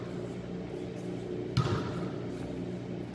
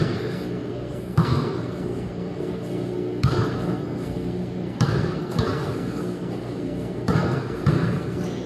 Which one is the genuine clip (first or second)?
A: first